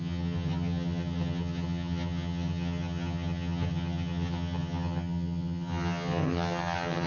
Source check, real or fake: fake